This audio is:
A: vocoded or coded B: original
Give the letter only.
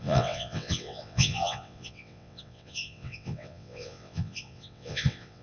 A